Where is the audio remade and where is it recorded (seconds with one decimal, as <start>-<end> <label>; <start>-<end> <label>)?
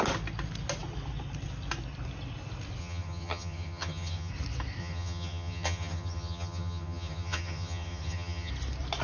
0.0-2.8 recorded; 2.8-4.3 remade; 4.3-4.8 recorded; 4.8-8.5 remade; 8.5-9.0 recorded